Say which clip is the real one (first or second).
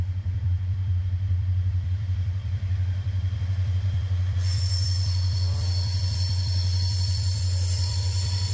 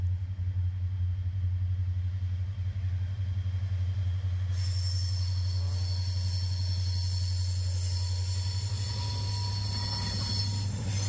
second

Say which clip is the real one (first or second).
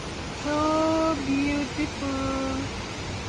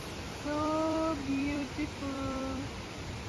first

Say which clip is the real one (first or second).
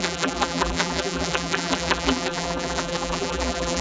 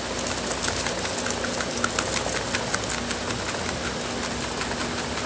second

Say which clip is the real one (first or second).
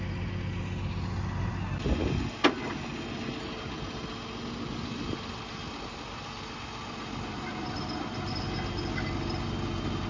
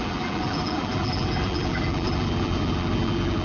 first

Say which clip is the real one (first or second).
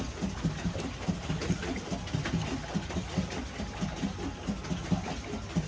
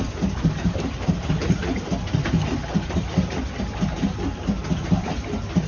first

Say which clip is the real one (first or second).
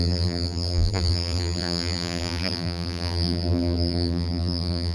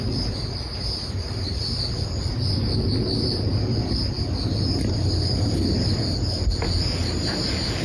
second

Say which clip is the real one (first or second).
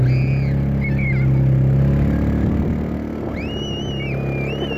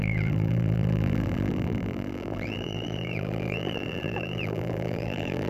first